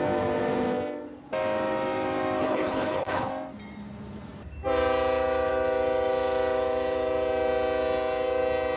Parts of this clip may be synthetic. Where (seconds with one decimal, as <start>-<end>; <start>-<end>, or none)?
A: 2.4-3.3